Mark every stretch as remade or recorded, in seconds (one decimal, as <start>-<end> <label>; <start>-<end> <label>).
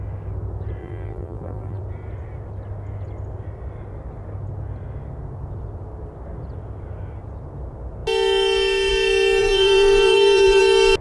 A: 0.0-0.8 recorded; 0.8-1.8 remade; 1.8-9.4 recorded; 9.4-10.6 remade; 10.6-11.0 recorded